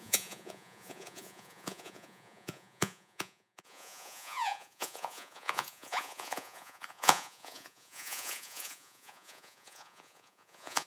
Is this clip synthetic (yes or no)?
yes